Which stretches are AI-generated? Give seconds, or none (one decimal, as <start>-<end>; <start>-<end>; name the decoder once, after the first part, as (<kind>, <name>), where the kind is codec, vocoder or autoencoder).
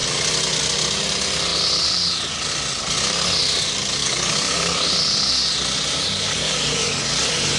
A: 4.0-4.9 (codec, DAC); 6.3-7.0